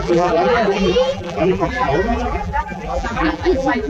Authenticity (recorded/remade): remade